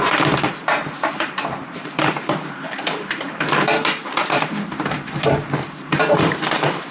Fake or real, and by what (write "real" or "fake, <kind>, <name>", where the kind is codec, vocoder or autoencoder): fake, vocoder, BigVGAN v2